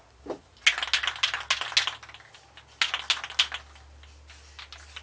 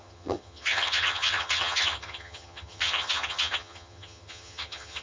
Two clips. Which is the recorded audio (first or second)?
first